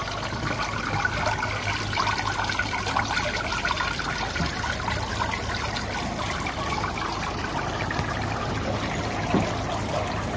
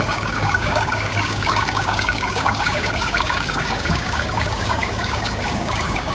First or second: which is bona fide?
first